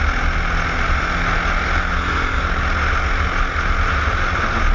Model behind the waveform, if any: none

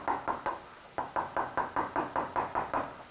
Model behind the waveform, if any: none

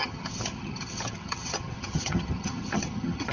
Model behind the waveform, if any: vocoder, HiFi-GAN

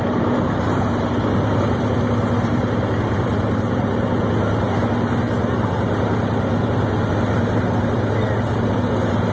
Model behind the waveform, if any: vocoder, BigVGAN v2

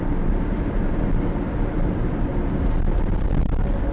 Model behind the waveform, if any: none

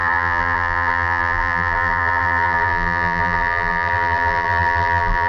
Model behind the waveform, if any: vocoder, BigVGAN v2